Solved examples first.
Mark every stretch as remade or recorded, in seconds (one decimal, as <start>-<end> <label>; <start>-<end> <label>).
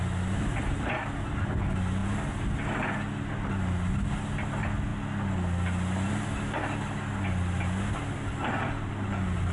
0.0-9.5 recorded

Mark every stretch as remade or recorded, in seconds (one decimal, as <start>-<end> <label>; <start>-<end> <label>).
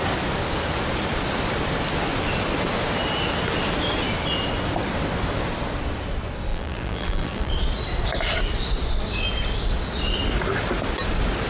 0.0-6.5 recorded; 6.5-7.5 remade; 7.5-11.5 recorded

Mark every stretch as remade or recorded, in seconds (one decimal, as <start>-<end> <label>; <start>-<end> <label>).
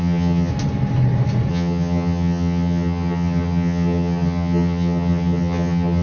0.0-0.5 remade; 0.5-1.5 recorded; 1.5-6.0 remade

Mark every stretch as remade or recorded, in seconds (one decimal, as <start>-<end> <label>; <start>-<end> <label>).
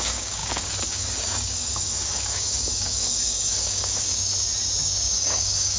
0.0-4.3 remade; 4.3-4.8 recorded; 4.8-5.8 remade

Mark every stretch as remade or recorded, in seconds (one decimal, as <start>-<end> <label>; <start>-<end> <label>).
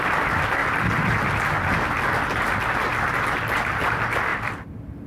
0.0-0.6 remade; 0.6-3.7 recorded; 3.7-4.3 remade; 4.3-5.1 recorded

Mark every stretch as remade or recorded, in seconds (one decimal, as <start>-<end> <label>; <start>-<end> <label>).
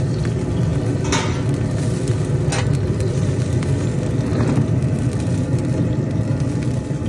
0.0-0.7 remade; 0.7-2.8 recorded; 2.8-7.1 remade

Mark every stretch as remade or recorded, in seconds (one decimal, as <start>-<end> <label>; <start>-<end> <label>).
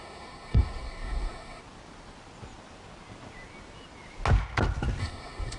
0.0-1.6 remade; 1.6-5.0 recorded; 5.0-5.6 remade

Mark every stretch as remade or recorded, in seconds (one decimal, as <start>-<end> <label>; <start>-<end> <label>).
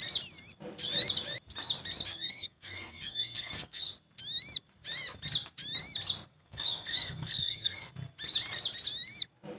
0.0-2.1 recorded; 2.1-3.9 remade; 3.9-6.3 recorded; 6.3-7.9 remade; 7.9-9.6 recorded